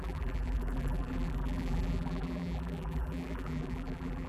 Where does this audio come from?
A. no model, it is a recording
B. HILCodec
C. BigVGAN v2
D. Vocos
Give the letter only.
C